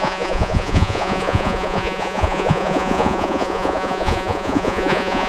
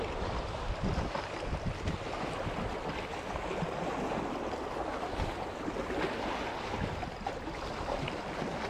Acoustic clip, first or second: second